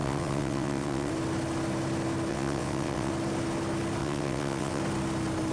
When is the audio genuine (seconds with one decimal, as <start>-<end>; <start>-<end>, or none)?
1.1-2.3; 3.1-4.0; 4.8-5.5